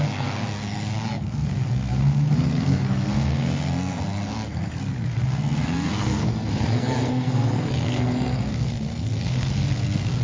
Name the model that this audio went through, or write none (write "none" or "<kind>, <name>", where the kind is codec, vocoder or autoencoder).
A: codec, SNAC